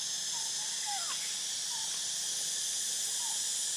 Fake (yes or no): no